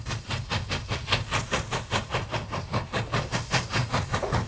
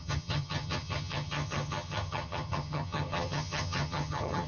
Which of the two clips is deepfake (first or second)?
second